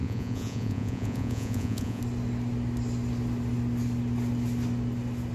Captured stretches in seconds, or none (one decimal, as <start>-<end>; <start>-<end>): 2.0-5.3